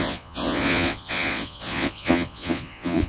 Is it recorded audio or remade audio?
remade